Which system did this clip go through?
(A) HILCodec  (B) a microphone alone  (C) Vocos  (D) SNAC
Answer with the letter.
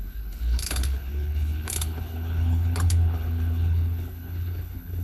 A